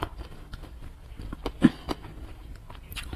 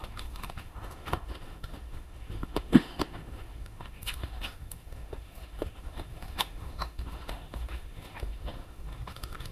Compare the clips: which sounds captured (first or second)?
first